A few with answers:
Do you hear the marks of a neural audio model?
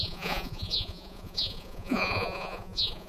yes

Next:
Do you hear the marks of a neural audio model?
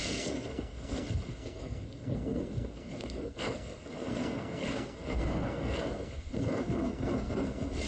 yes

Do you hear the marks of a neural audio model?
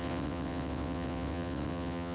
yes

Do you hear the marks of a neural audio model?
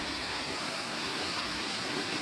yes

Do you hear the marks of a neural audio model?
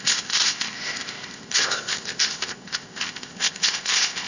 yes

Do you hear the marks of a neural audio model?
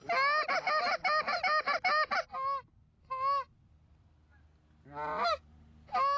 no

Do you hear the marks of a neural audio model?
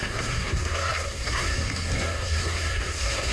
yes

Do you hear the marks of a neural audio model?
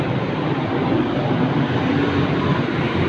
no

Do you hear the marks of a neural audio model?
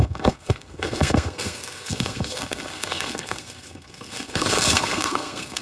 yes